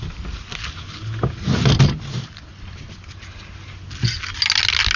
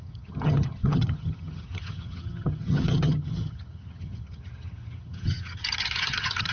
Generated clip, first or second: second